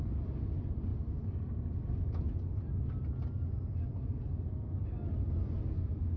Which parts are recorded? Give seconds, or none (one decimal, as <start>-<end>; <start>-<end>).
0.0-6.2